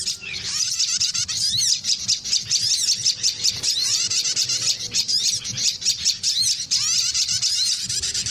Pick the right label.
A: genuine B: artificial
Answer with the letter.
B